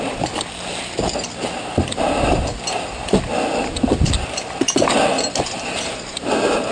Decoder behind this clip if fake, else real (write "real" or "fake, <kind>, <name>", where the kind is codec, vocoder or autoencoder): real